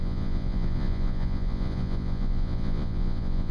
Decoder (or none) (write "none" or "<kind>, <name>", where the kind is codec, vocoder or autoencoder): vocoder, Vocos